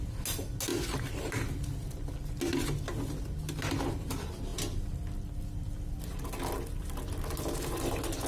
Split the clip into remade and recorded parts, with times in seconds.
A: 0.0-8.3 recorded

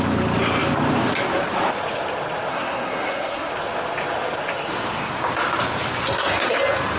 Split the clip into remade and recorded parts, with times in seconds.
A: 0.0-2.5 recorded; 2.5-3.5 remade; 3.5-6.0 recorded; 6.0-6.6 remade; 6.6-7.0 recorded

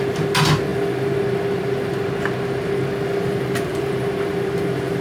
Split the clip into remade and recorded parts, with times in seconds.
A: 0.0-5.0 remade